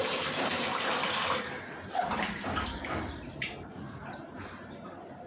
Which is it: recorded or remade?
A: remade